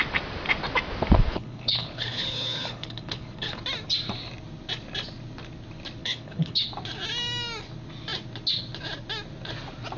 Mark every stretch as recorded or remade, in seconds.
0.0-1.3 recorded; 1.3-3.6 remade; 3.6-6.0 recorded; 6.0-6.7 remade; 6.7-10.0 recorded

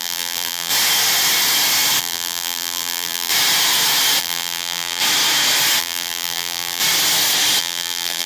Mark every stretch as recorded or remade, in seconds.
0.0-0.7 remade; 0.7-2.0 recorded; 2.0-3.3 remade; 3.3-4.2 recorded; 4.2-5.0 remade; 5.0-5.8 recorded; 5.8-6.8 remade; 6.8-7.6 recorded; 7.6-8.3 remade

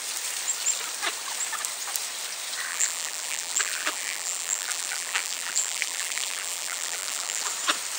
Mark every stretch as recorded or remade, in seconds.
0.0-2.7 recorded; 2.7-7.5 remade; 7.5-8.0 recorded

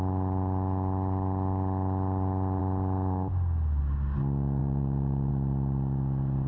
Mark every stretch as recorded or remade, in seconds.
0.0-4.6 recorded; 4.6-5.3 remade; 5.3-6.5 recorded

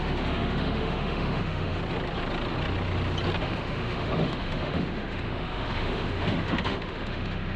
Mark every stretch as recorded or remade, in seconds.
0.0-1.8 remade; 1.8-3.4 recorded; 3.4-7.6 remade

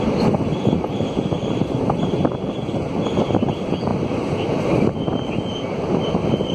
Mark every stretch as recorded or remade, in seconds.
0.0-6.5 recorded